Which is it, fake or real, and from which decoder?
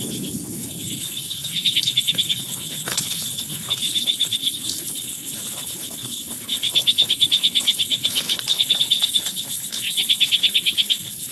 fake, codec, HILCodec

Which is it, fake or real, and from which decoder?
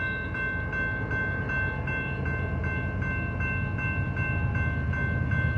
real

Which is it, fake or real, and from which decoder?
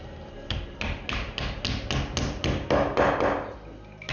real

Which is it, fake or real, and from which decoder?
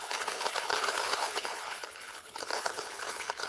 fake, codec, HILCodec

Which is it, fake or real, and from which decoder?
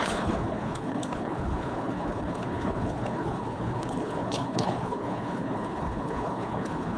fake, codec, HILCodec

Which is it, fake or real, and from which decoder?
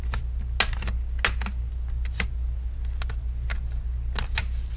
real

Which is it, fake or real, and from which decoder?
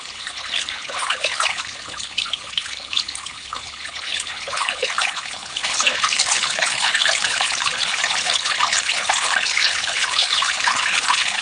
fake, codec, HILCodec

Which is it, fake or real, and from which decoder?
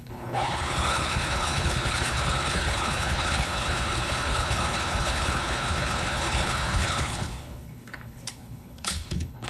fake, codec, HILCodec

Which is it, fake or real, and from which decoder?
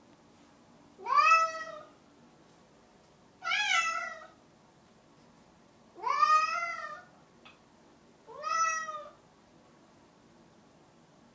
real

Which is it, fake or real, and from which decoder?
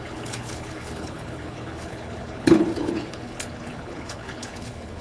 fake, codec, HILCodec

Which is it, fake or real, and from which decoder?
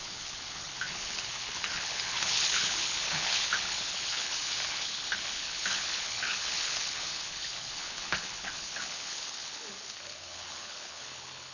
fake, codec, HILCodec